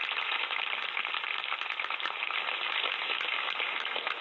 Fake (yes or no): no